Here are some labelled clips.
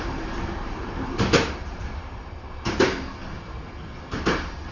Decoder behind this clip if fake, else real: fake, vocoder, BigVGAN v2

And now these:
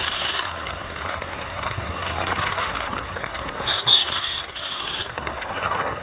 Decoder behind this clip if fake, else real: fake, codec, SNAC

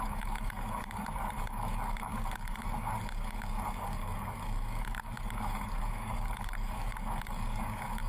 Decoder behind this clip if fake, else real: fake, codec, DAC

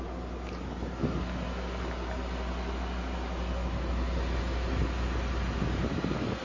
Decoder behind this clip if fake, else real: real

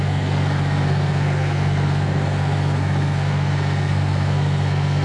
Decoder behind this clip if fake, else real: fake, codec, SNAC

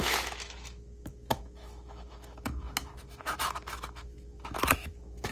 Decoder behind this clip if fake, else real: fake, autoencoder, DAC-VAE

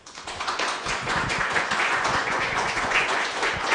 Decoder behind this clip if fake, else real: fake, vocoder, Vocos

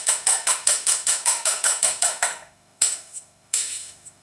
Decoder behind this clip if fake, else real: fake, autoencoder, DAC-VAE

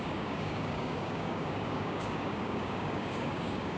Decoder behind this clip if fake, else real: fake, codec, DAC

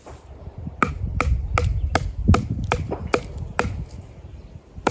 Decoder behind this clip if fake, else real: real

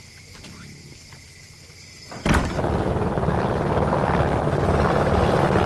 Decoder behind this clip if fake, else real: real